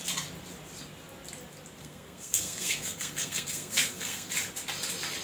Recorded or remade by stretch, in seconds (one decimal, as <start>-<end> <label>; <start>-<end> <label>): 0.0-1.8 recorded; 1.8-4.3 remade; 4.3-5.2 recorded